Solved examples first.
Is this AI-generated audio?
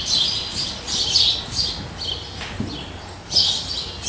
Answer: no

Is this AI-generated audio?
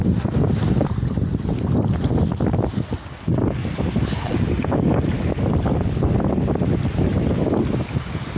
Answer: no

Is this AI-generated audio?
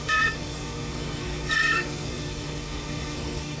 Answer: yes